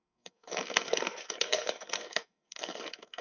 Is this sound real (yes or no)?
no